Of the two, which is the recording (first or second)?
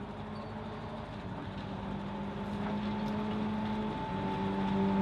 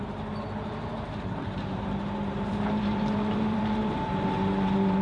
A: first